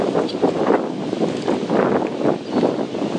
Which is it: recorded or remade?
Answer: recorded